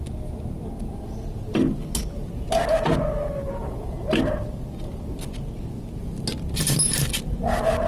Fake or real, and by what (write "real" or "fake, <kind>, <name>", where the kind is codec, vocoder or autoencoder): real